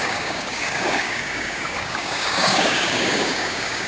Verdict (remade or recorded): remade